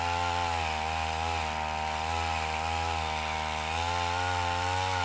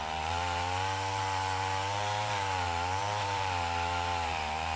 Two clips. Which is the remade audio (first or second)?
second